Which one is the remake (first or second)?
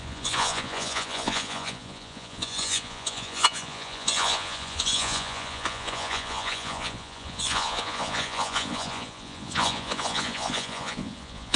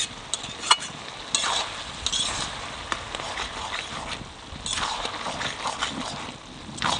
first